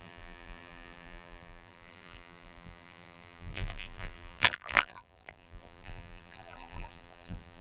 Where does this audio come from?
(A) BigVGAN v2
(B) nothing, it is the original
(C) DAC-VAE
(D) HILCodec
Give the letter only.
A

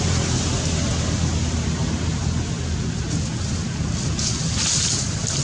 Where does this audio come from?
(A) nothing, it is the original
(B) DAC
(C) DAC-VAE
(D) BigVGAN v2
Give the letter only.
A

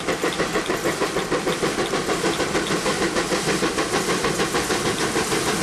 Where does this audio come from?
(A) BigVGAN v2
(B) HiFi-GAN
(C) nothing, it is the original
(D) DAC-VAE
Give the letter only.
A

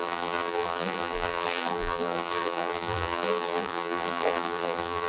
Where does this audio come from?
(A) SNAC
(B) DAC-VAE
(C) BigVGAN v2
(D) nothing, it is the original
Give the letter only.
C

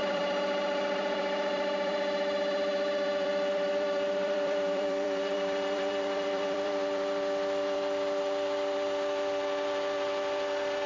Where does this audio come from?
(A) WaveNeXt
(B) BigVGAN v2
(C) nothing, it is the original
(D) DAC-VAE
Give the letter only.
B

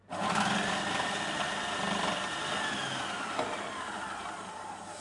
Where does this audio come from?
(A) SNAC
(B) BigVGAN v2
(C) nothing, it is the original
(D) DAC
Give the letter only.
C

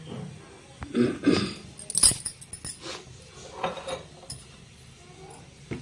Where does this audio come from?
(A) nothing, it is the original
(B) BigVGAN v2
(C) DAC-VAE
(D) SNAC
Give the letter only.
A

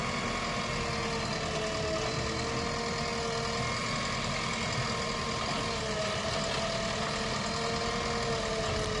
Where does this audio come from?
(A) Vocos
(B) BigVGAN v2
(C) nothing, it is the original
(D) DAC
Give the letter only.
C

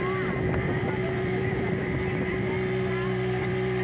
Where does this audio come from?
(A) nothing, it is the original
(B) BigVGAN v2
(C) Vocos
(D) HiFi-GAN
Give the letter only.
B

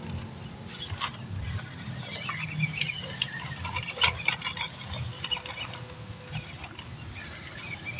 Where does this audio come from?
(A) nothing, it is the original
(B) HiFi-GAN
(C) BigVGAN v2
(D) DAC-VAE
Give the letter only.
A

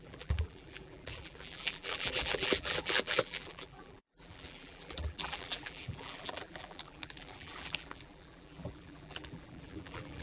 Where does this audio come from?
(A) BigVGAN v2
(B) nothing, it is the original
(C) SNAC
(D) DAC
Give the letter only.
A